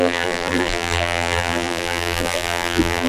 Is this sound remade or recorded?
remade